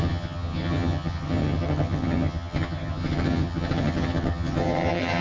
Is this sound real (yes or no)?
no